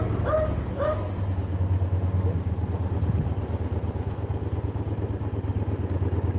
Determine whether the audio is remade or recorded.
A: recorded